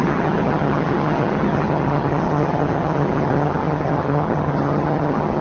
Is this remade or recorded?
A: remade